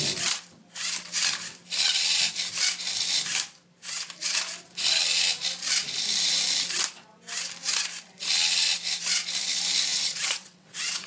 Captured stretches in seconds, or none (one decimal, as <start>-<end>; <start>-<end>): 0.0-9.9